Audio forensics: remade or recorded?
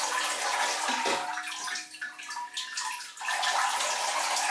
recorded